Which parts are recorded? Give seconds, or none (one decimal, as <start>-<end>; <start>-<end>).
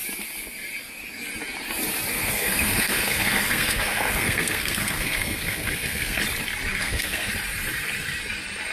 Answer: 0.0-2.1; 6.2-6.7; 7.3-8.7